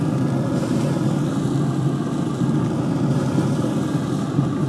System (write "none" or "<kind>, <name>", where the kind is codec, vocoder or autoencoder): none